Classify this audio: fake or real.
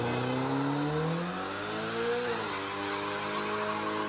real